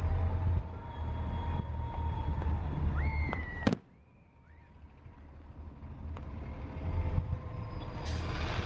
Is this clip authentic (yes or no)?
yes